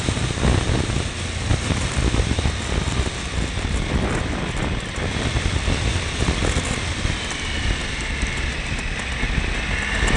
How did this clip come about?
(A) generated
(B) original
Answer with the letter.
B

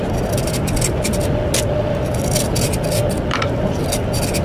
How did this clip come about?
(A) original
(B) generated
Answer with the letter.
A